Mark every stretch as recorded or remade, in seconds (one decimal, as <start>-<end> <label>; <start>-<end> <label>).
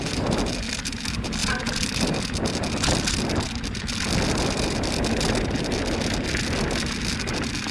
0.0-7.7 recorded